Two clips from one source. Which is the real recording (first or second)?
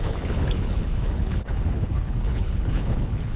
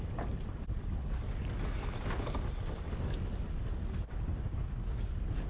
second